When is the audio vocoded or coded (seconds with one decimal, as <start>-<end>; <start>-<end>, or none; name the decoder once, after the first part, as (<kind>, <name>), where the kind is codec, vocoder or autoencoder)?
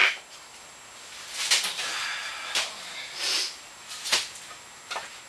none